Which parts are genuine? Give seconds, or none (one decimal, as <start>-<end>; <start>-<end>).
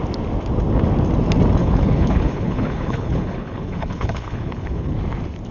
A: 0.0-1.6; 4.9-5.5